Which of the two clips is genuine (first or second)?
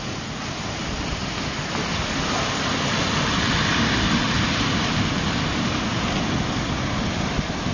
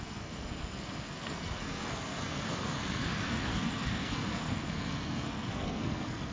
first